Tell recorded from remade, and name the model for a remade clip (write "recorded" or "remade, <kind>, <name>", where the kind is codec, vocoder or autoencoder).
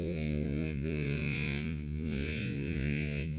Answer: remade, vocoder, Vocos